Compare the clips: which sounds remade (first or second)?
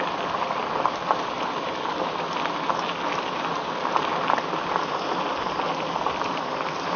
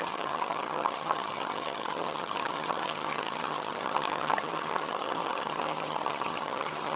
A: second